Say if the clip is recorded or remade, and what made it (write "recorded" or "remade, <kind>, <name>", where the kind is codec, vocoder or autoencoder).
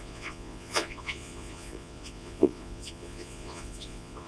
remade, vocoder, Vocos